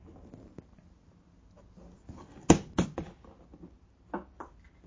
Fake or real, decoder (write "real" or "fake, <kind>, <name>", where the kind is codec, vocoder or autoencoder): real